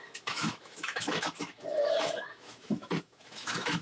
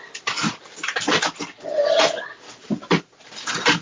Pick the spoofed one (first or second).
first